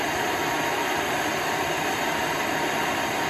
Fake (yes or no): no